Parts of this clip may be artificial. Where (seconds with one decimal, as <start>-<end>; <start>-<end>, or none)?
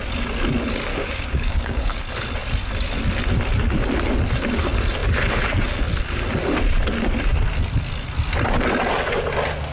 0.9-2.0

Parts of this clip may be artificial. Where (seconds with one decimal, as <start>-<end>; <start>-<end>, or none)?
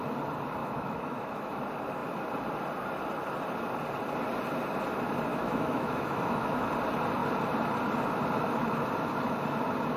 0.6-1.6; 5.3-6.7